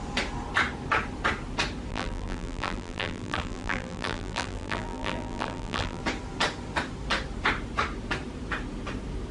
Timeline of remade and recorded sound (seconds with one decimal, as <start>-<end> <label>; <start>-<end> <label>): 0.0-1.9 recorded; 1.9-6.0 remade; 6.0-9.3 recorded